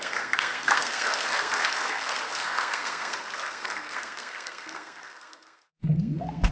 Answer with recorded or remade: remade